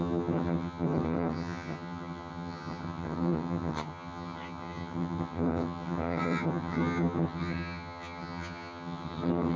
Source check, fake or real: fake